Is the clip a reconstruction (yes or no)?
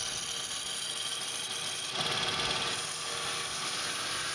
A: no